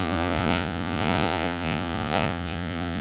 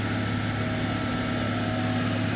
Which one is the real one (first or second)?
second